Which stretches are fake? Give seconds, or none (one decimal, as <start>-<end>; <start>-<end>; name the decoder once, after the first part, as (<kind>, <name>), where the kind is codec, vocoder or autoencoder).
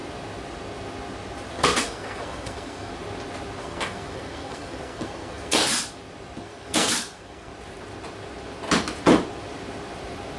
1.5-2.9 (codec, SNAC); 3.6-5.7; 6.4-7.5